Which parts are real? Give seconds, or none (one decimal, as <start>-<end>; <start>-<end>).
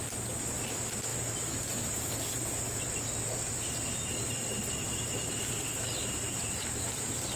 0.0-7.4